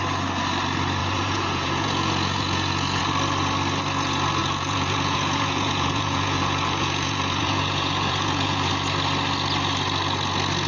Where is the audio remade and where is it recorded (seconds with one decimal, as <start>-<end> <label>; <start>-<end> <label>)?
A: 0.0-1.0 recorded; 1.0-3.0 remade; 3.0-4.4 recorded; 4.4-8.7 remade; 8.7-10.7 recorded